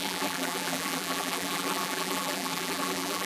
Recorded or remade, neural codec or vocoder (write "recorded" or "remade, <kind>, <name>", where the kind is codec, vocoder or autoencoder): remade, vocoder, BigVGAN v2